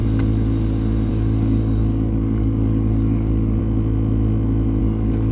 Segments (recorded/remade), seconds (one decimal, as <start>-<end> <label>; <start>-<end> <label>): 0.0-1.1 recorded; 1.1-3.6 remade; 3.6-4.8 recorded; 4.8-5.3 remade